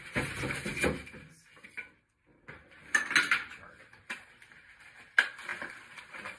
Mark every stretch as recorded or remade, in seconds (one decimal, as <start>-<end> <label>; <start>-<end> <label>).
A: 0.0-0.7 remade; 0.7-4.5 recorded; 4.5-6.4 remade

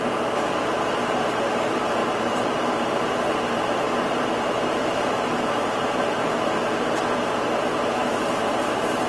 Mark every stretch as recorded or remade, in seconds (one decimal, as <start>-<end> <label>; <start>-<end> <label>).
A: 0.0-2.0 recorded; 2.0-7.0 remade; 7.0-8.0 recorded; 8.0-9.1 remade

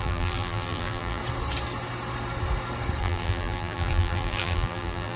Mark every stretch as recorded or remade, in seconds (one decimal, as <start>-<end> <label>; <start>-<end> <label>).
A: 0.0-1.2 remade; 1.2-3.0 recorded; 3.0-5.2 remade

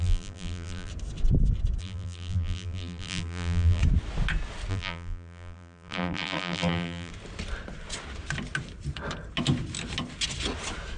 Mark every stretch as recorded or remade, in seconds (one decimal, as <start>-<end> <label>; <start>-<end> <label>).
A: 0.0-0.9 remade; 0.9-1.8 recorded; 1.8-3.8 remade; 3.8-4.7 recorded; 4.7-7.1 remade; 7.1-11.0 recorded